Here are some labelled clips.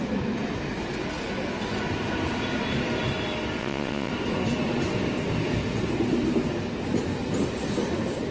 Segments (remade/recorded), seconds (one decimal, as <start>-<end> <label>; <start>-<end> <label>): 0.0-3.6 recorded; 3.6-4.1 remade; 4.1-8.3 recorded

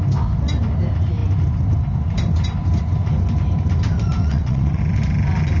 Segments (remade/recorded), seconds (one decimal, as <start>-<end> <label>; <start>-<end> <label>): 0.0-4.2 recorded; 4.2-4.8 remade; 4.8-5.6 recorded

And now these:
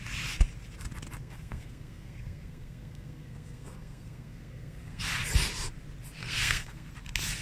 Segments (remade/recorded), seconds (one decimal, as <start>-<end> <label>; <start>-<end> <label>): 0.0-1.2 recorded; 1.2-5.0 remade; 5.0-6.2 recorded; 6.2-6.9 remade; 6.9-7.4 recorded

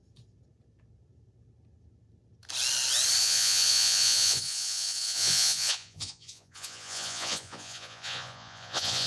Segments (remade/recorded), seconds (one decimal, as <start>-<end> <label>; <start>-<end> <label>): 0.0-3.2 recorded; 3.2-9.1 remade